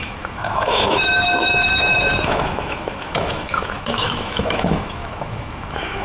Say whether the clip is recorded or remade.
remade